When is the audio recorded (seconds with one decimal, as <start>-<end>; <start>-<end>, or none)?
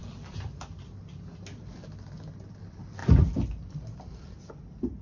0.6-3.0; 4.5-5.0